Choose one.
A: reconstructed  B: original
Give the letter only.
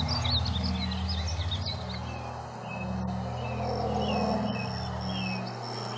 B